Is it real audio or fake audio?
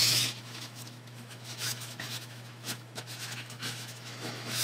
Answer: fake